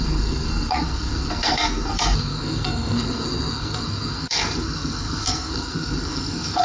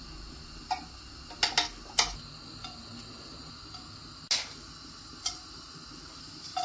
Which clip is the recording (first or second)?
second